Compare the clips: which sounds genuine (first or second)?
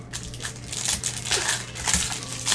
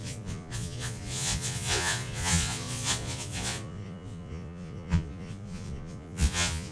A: first